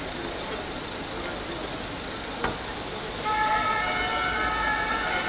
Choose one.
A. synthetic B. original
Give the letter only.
B